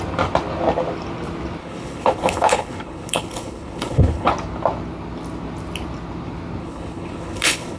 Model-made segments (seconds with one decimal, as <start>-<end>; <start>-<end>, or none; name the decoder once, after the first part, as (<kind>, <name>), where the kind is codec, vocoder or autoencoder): 1.6-4.3 (codec, HILCodec); 6.6-7.8